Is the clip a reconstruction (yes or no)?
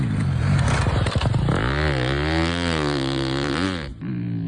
no